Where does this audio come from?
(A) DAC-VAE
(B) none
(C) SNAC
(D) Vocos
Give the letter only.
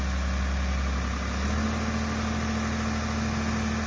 B